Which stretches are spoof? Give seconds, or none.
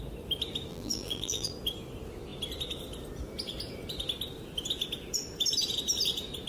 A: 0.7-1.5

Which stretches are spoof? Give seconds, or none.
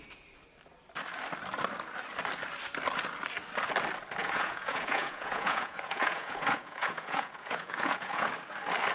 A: 4.2-8.3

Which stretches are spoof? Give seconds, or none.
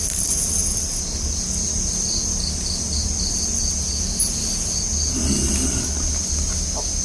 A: none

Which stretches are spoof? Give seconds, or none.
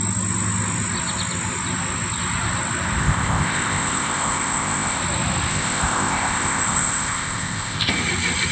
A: 3.0-5.0; 5.5-7.9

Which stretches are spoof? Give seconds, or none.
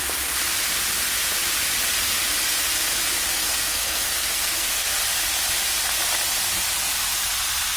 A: 3.4-5.0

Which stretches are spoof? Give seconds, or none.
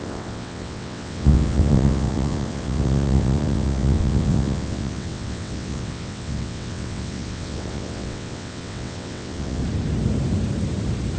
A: 0.0-9.6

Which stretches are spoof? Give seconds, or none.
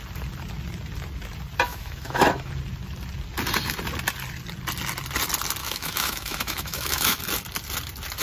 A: 1.7-2.5; 5.6-7.2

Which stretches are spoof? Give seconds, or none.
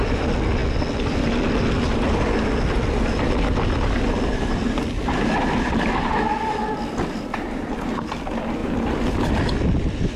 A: none